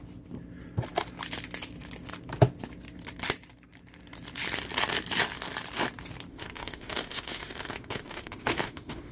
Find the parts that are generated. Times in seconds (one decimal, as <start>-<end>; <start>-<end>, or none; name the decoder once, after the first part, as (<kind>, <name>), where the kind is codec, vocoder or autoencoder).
6.3-9.1 (autoencoder, DAC-VAE)